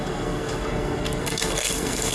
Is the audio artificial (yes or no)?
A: yes